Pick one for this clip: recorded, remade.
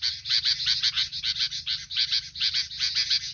recorded